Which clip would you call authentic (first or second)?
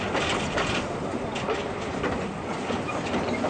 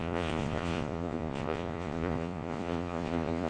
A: first